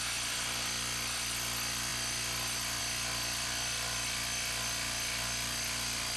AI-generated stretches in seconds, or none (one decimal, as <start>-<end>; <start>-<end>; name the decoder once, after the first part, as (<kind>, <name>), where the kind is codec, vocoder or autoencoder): none

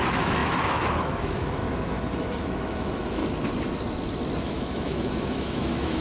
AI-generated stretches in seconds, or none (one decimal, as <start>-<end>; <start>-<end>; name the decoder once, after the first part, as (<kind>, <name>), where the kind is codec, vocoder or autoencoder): 0.0-1.6 (autoencoder, DAC-VAE); 2.2-3.2; 4.4-6.0

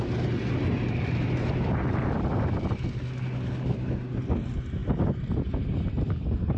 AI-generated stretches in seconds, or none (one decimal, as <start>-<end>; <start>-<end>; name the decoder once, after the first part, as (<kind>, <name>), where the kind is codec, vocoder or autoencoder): none

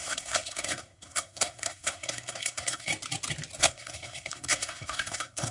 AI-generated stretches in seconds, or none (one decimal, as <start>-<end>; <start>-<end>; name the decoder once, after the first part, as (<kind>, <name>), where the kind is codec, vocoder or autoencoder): 0.0-2.9 (codec, SNAC); 3.6-5.5

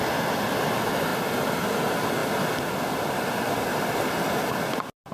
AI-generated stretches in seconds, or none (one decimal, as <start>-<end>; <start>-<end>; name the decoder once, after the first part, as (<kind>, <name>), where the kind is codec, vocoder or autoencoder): 3.7-4.4 (vocoder, BigVGAN v2)